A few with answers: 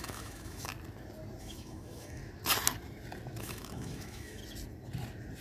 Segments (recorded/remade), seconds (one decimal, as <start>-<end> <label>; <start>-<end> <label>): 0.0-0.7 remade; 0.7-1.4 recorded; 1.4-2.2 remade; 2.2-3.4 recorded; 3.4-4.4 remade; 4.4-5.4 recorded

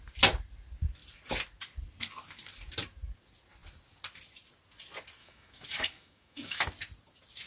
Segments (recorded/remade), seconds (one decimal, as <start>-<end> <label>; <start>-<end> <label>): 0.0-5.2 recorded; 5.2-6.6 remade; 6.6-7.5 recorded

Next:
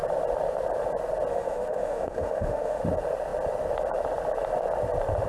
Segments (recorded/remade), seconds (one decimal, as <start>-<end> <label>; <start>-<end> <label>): 0.0-1.3 recorded; 1.3-2.8 remade; 2.8-5.3 recorded

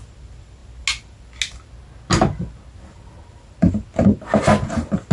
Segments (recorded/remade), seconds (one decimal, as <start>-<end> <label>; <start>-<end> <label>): 0.0-5.1 recorded

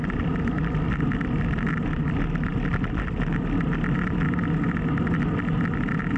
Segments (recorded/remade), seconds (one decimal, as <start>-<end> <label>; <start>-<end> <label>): 0.0-6.2 recorded